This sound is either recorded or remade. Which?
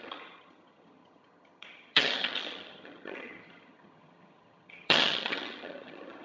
remade